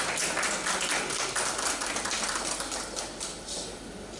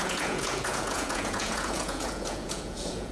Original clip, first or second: first